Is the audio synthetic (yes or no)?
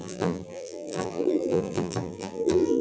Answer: yes